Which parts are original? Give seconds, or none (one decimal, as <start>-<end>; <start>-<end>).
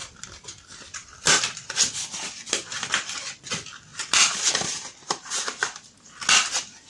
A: 0.0-3.9; 6.1-6.9